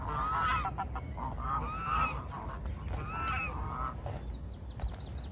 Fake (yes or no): no